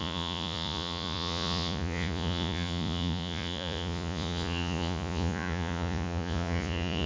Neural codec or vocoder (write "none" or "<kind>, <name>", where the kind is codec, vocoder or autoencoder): vocoder, Vocos